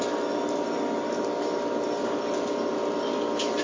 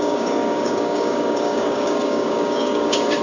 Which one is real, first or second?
first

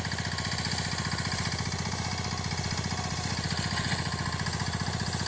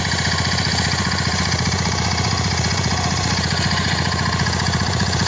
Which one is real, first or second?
first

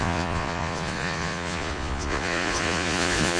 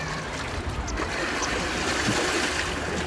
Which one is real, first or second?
second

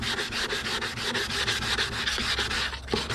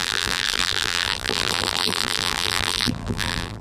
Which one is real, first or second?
first